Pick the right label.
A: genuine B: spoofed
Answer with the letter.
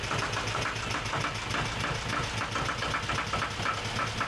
A